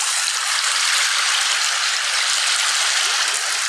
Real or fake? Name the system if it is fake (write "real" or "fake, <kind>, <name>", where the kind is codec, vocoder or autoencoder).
real